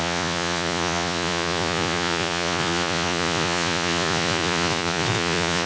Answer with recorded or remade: remade